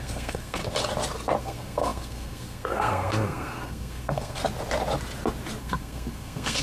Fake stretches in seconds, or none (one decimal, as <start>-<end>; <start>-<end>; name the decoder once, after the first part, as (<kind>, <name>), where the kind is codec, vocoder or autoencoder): 0.0-0.6 (codec, SNAC); 1.4-4.4; 5.6-6.6